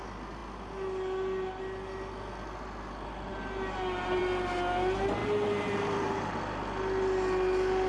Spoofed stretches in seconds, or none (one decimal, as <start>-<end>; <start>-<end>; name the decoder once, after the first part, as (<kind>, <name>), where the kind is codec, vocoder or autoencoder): 5.2-6.4 (vocoder, BigVGAN v2)

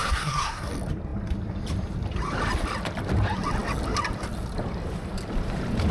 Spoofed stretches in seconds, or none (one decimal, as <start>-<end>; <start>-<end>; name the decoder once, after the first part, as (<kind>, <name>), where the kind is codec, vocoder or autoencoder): 0.0-0.7 (codec, SNAC)

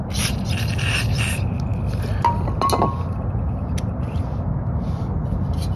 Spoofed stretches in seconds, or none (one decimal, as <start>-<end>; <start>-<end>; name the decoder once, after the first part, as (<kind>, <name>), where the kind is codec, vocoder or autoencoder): none